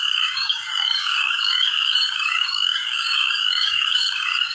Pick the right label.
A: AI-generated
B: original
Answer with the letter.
A